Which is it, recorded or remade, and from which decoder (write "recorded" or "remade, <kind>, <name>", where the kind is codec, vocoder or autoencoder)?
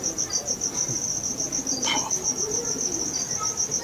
recorded